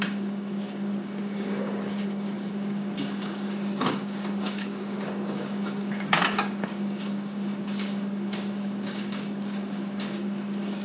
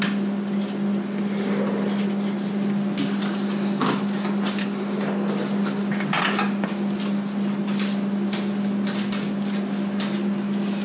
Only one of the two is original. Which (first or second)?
second